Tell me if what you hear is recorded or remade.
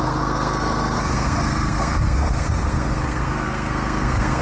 remade